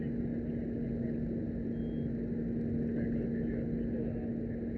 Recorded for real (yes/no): yes